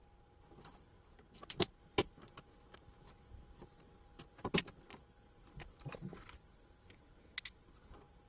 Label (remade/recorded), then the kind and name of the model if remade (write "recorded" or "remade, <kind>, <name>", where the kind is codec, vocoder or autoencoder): recorded